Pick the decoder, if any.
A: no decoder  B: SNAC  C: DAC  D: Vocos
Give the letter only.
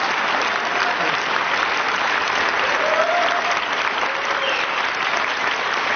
A